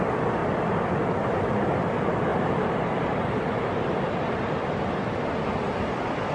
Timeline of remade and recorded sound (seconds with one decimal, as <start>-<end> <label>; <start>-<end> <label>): 0.0-2.3 recorded; 2.3-3.0 remade; 3.0-6.3 recorded